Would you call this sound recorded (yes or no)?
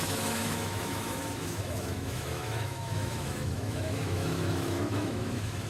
no